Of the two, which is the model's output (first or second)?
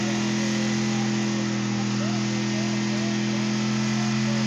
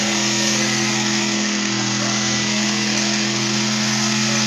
second